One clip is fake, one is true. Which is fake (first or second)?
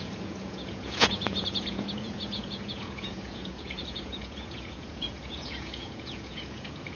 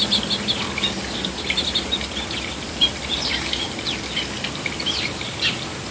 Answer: first